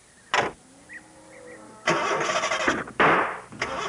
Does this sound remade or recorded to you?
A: recorded